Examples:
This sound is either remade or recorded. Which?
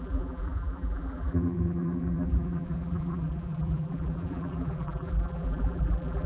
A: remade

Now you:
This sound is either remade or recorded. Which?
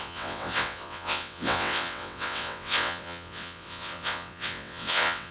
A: remade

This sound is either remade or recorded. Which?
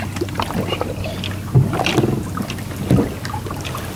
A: recorded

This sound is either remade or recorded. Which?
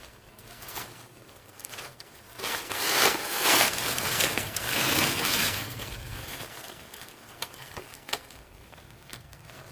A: remade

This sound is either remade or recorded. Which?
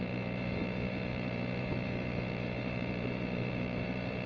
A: remade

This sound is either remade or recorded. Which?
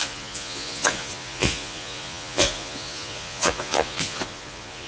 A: remade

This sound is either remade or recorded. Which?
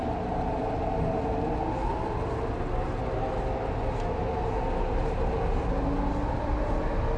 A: recorded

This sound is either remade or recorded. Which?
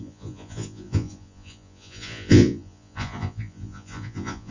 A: remade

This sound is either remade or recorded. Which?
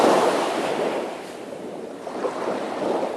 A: remade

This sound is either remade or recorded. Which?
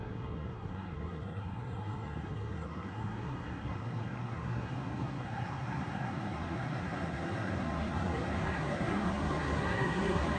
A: remade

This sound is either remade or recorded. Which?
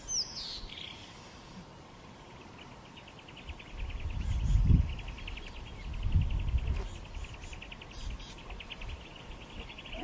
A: recorded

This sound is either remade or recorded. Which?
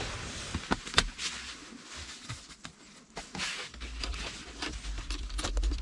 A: recorded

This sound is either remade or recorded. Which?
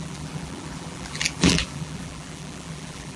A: remade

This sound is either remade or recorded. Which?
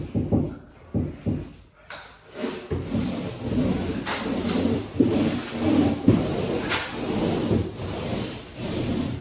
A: recorded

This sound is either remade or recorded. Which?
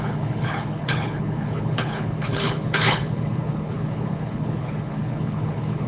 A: remade